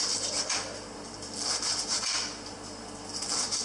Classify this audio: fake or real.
real